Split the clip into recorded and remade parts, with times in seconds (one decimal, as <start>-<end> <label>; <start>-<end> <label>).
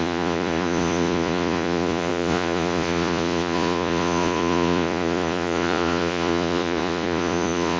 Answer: 0.0-7.8 remade